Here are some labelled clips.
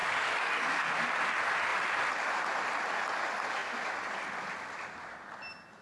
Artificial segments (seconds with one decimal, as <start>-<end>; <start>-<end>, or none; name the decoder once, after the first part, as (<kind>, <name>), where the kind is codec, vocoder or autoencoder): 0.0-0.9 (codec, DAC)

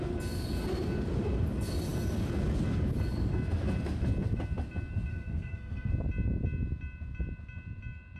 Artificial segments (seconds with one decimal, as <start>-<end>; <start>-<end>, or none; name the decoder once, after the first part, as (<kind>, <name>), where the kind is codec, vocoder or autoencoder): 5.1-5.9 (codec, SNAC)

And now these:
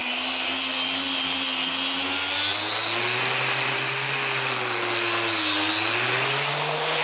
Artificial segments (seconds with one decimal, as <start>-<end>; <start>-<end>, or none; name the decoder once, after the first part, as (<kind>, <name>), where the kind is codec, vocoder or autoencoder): none